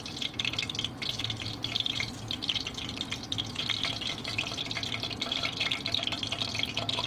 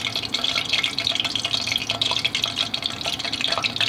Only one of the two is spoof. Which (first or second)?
first